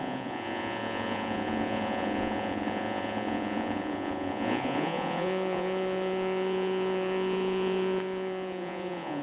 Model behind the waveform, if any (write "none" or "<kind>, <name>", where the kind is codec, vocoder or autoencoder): vocoder, Vocos